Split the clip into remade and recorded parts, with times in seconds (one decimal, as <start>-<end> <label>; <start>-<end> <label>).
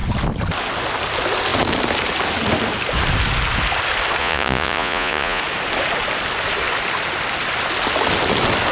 0.0-4.2 recorded; 4.2-5.4 remade; 5.4-8.7 recorded